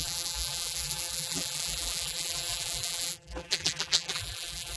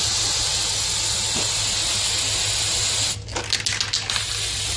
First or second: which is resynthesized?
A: first